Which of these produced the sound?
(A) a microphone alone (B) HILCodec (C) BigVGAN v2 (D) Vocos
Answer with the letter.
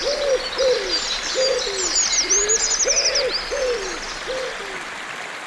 A